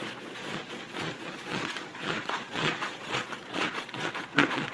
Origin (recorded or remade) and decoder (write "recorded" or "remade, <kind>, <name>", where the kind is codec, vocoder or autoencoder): remade, vocoder, Vocos